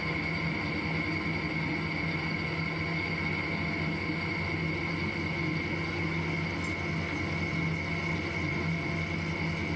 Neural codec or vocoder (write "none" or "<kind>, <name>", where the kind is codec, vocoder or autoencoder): none